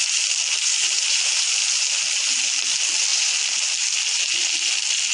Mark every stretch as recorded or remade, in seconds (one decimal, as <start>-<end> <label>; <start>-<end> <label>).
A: 0.0-5.1 recorded